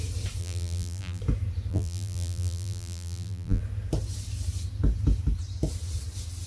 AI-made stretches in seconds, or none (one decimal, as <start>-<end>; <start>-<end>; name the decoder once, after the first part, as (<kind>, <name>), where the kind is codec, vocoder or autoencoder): 0.4-1.2 (vocoder, BigVGAN v2); 1.7-3.6